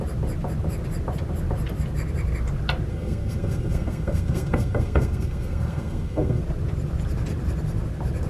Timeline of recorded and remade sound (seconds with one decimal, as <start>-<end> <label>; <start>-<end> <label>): 0.0-2.9 recorded; 2.9-6.4 remade; 6.4-8.3 recorded